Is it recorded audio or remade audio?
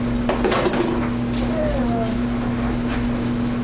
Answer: recorded